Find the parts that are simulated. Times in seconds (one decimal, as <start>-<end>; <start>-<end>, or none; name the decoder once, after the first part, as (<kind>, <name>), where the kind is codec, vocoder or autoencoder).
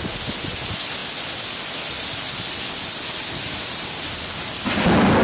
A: none